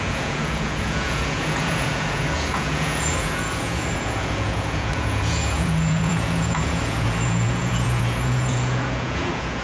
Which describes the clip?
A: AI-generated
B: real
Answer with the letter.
A